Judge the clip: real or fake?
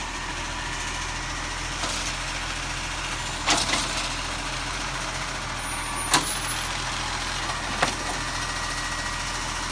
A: real